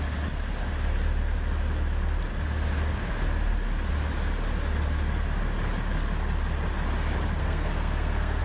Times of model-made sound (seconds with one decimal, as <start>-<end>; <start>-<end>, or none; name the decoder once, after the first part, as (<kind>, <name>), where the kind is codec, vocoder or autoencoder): 7.4-8.4 (codec, SNAC)